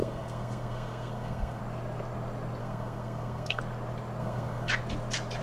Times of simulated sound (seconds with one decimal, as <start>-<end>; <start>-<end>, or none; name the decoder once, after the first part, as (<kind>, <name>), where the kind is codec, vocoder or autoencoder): 0.0-1.6 (codec, SNAC); 2.6-3.6; 4.2-4.7

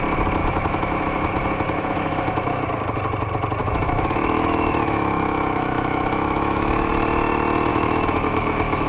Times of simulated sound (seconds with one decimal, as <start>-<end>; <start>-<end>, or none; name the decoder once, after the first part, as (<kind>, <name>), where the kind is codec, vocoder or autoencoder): 0.4-2.6 (autoencoder, DAC-VAE); 3.6-6.9; 7.7-8.9

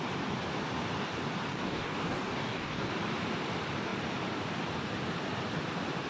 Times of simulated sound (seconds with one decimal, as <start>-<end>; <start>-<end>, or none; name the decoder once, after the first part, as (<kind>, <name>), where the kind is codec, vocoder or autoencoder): 1.5-2.9 (codec, DAC)

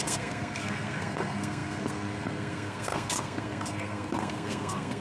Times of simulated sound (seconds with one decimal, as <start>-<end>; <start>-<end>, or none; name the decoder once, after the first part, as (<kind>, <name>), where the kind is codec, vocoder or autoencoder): 0.0-5.0 (codec, SNAC)

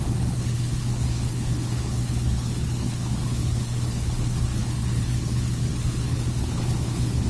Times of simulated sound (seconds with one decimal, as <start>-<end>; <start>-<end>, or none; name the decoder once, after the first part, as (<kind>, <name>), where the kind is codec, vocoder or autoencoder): 0.0-7.3 (codec, HILCodec)